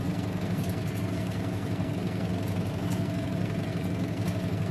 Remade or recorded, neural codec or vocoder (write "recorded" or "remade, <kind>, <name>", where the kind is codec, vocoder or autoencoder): remade, codec, SNAC